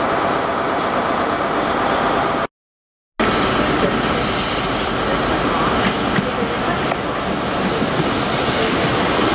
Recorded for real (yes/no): yes